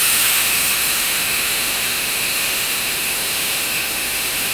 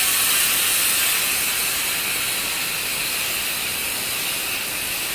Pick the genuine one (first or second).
second